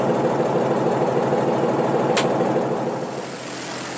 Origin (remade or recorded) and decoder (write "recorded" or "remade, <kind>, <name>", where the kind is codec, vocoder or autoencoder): recorded